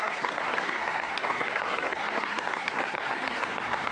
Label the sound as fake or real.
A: fake